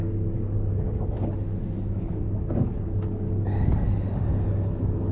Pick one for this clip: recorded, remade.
remade